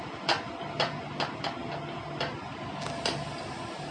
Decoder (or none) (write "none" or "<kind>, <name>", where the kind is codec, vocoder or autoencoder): none